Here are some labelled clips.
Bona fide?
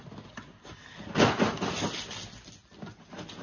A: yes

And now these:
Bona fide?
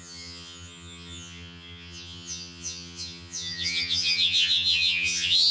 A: no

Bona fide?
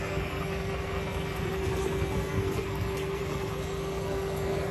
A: no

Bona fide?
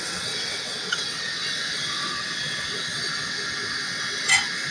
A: no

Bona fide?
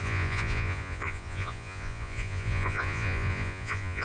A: no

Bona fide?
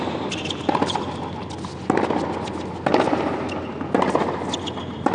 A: yes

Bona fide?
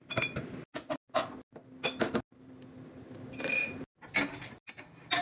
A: yes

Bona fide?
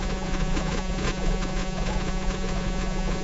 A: no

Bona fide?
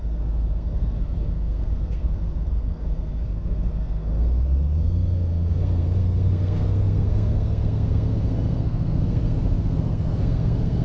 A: no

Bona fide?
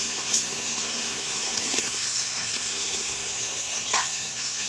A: no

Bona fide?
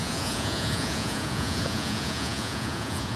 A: no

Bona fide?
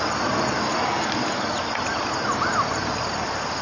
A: yes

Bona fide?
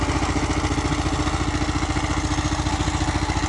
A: yes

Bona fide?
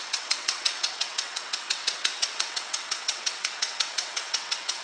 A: no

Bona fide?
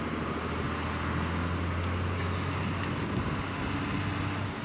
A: yes